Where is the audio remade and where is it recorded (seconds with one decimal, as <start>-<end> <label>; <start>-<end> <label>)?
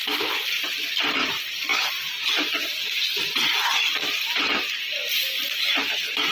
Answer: 0.0-6.3 remade